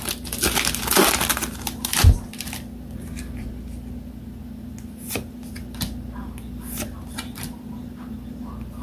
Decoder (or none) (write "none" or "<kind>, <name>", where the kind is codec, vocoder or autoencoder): none